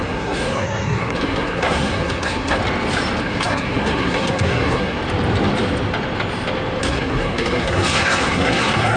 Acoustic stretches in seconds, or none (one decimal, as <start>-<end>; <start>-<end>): 2.6-3.2; 5.0-6.8